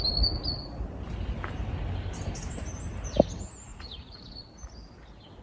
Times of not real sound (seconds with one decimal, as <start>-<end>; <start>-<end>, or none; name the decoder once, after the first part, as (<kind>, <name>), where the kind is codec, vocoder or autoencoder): 3.7-4.5 (vocoder, Vocos)